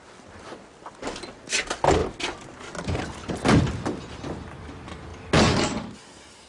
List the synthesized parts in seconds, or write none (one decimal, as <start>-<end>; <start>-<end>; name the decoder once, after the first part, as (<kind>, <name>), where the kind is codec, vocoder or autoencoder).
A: none